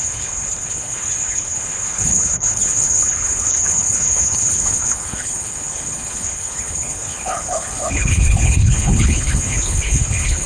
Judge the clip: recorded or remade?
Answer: remade